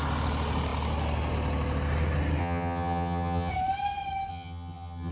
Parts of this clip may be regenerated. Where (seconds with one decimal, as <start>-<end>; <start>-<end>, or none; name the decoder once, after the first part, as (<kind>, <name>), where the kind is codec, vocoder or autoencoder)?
2.4-3.5 (vocoder, HiFi-GAN); 4.3-5.1